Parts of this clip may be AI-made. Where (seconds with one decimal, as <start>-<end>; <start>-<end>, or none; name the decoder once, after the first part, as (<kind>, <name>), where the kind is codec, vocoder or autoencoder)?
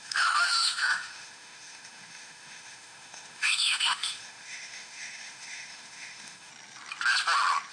0.0-6.5 (autoencoder, DAC-VAE)